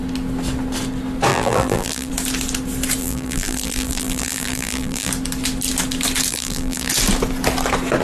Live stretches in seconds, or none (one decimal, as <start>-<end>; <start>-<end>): 0.0-1.3; 2.1-3.0; 5.1-6.3; 6.9-8.0